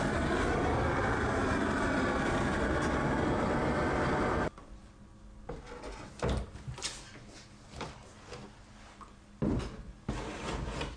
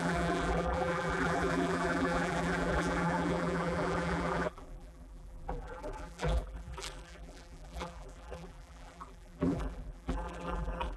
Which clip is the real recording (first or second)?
first